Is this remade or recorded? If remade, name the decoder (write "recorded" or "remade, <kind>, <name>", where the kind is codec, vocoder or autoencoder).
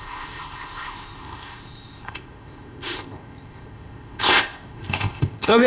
remade, codec, ZipCodec